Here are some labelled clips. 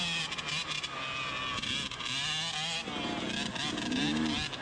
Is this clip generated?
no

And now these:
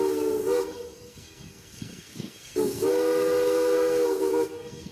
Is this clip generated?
yes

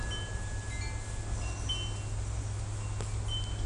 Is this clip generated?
no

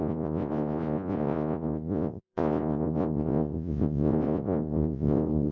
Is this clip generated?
yes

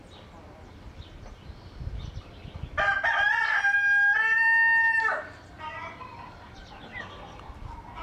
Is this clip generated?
no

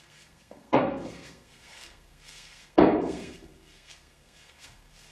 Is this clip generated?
yes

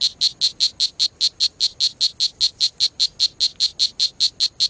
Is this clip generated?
no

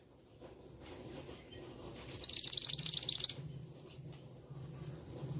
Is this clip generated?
no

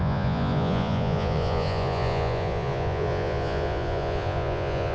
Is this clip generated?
yes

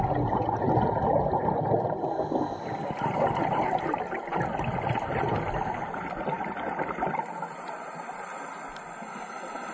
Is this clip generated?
no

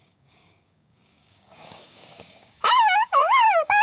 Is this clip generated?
yes